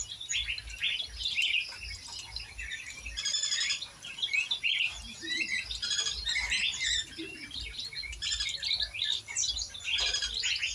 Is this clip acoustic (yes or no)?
yes